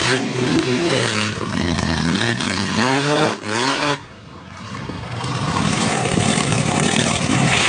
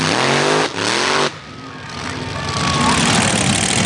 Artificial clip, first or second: first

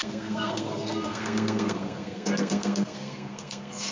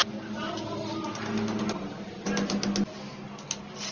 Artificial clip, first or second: first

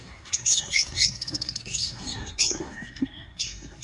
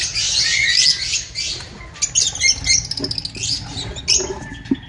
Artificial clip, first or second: first